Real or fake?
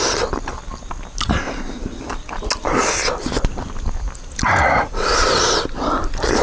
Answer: real